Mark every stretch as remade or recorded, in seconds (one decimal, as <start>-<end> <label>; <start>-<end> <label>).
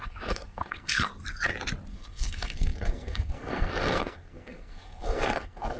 0.0-1.1 remade; 1.1-1.9 recorded; 1.9-5.8 remade